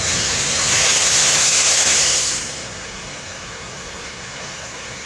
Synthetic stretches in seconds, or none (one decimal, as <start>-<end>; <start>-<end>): 0.0-5.1